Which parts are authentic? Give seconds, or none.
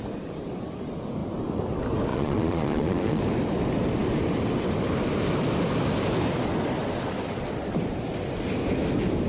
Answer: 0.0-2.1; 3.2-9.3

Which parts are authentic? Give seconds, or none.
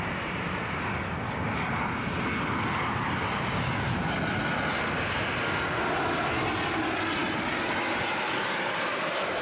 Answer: 0.0-9.4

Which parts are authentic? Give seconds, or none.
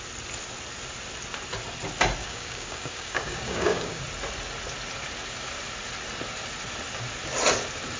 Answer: 0.0-2.2; 4.0-8.0